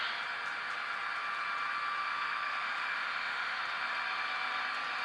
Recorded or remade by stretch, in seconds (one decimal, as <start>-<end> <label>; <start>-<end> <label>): 0.0-2.0 recorded; 2.0-3.6 remade; 3.6-5.0 recorded